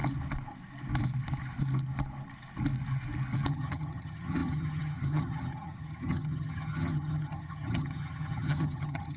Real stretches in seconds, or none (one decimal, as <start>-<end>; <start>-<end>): 0.0-3.5